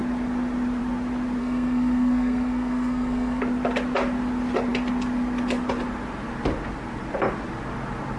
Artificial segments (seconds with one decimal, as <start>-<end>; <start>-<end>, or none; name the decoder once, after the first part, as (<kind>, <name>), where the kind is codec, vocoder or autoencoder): 1.4-3.4 (codec, SNAC)